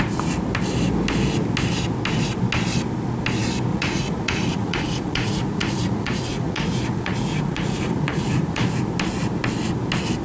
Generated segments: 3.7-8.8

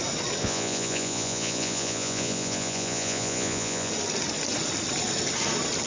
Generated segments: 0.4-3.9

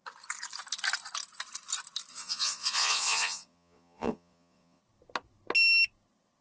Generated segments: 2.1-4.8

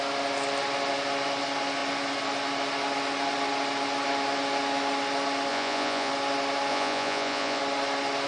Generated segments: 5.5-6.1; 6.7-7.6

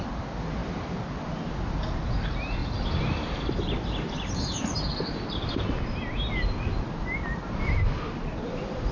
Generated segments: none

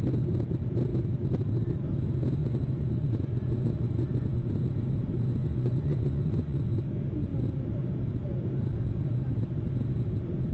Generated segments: 2.4-4.5; 5.4-6.6

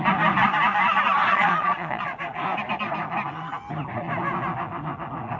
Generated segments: 1.3-2.2